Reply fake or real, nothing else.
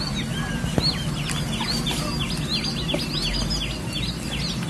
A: real